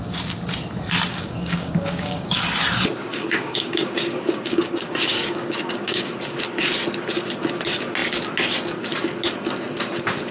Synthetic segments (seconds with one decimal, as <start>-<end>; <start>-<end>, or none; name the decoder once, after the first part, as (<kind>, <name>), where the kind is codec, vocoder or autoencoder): 1.1-2.4 (codec, DAC); 3.1-6.1